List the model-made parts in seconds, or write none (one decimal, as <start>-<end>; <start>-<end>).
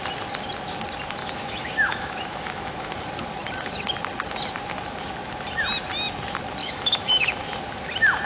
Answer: 1.2-2.9; 6.6-7.3